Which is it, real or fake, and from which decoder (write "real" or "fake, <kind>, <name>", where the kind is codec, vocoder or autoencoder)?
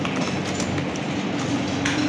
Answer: real